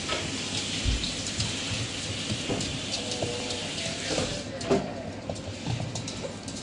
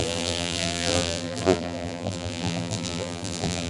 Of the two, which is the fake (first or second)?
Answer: second